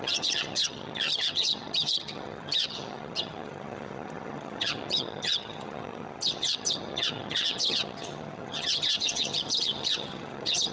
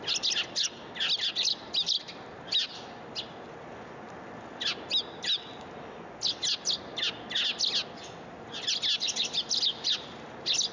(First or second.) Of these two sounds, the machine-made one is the first